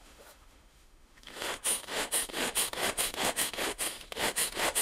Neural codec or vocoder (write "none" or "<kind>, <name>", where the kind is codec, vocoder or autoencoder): autoencoder, DAC-VAE